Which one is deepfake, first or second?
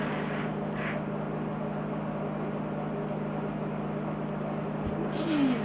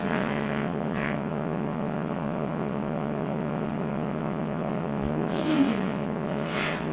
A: second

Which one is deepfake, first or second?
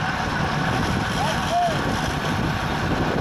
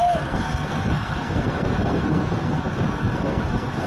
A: second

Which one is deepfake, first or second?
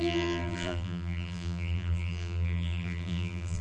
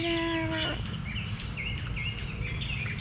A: first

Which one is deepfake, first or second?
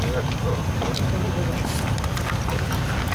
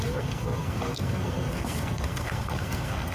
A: second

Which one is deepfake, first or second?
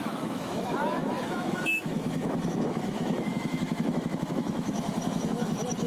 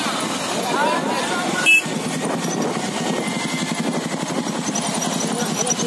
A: first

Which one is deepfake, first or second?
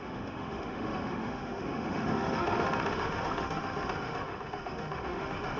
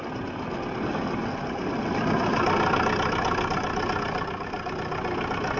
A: first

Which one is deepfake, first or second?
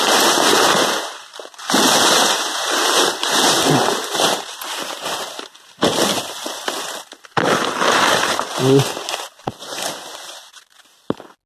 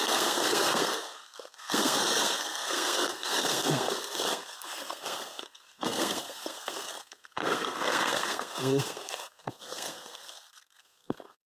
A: second